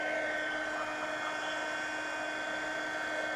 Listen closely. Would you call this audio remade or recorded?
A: recorded